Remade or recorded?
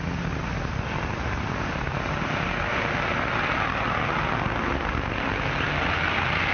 recorded